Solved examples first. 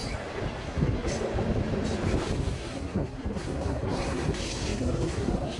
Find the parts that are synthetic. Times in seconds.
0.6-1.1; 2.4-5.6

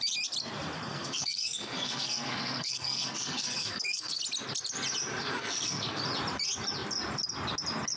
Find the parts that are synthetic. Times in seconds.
0.9-4.2; 5.2-6.0

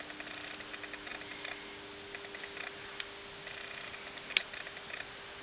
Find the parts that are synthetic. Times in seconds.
none

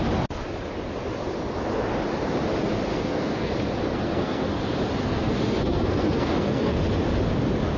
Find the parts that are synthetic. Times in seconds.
2.9-3.5; 3.9-4.6; 5.0-6.8

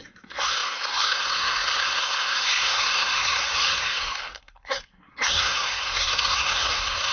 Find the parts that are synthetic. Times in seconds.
0.0-7.1

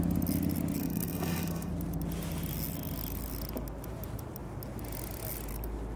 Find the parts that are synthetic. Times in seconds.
0.8-1.7

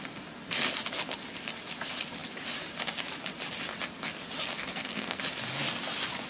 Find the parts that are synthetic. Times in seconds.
4.5-5.2